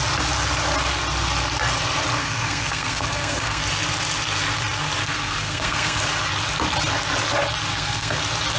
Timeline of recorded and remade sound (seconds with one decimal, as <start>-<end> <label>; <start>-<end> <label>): 0.0-2.2 recorded; 2.2-3.6 remade; 3.6-5.0 recorded; 5.0-6.0 remade; 6.0-7.7 recorded; 7.7-8.2 remade; 8.2-8.6 recorded